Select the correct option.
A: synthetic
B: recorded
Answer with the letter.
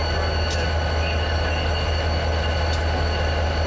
B